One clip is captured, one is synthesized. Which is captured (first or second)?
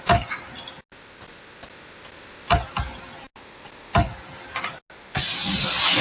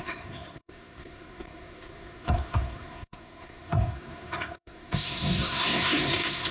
first